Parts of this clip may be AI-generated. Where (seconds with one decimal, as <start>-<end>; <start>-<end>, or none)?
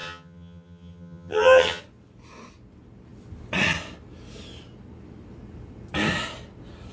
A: 0.0-1.8